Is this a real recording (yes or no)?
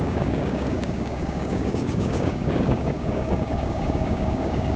no